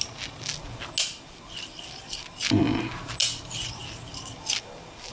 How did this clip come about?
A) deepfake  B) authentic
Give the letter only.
B